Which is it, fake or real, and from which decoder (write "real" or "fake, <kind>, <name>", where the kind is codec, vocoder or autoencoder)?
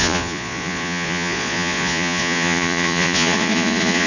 fake, vocoder, Vocos